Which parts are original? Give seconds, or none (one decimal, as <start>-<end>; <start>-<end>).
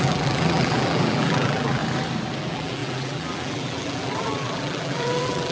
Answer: 1.8-2.4